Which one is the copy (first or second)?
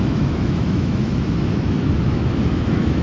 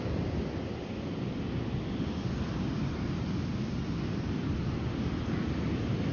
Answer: first